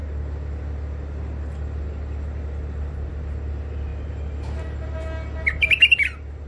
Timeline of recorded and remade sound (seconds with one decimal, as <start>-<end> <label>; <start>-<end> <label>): 0.0-6.5 recorded